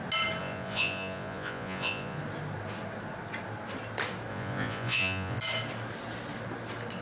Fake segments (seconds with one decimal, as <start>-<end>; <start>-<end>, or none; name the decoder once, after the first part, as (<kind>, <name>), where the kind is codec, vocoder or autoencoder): 0.4-2.2 (vocoder, Vocos); 4.3-5.4